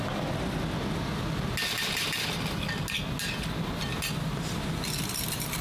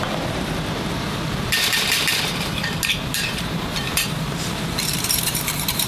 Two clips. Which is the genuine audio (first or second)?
first